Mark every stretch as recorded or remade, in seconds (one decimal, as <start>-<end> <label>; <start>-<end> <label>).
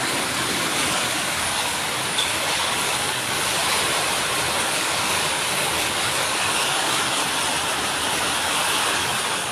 0.0-3.6 remade; 3.6-4.6 recorded; 4.6-7.2 remade; 7.2-8.0 recorded; 8.0-9.5 remade